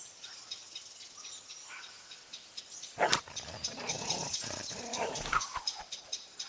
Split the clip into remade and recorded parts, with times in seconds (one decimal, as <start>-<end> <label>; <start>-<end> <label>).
0.0-1.6 recorded; 1.6-2.6 remade; 2.6-4.9 recorded; 4.9-6.0 remade; 6.0-6.5 recorded